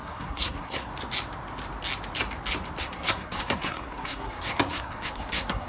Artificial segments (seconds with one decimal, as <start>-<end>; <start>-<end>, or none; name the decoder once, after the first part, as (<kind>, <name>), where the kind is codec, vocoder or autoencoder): 0.0-0.9 (codec, SNAC); 2.8-5.7